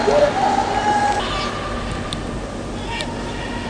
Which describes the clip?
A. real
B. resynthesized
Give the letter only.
A